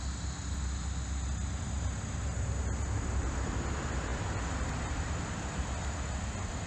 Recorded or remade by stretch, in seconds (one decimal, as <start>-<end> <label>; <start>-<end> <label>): 0.0-6.7 recorded